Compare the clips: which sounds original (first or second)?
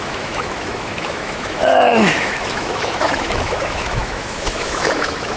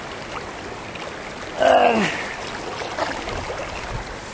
second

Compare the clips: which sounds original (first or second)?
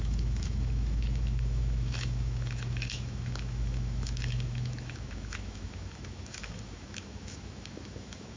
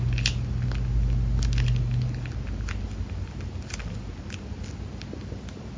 second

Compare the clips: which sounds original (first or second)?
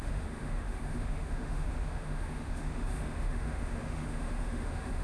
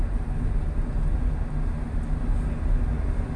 second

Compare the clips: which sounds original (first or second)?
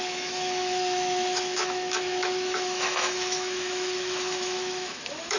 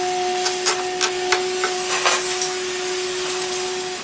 second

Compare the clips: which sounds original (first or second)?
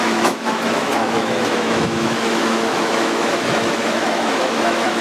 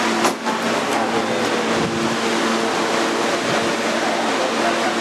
second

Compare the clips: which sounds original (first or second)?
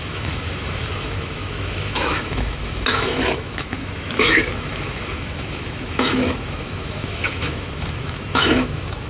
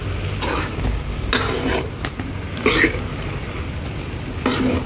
second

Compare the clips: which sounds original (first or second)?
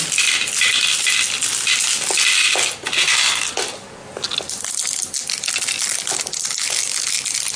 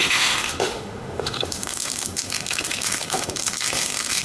first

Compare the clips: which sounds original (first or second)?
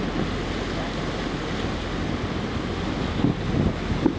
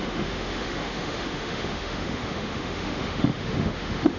first